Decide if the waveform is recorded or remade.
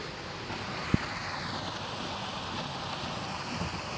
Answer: recorded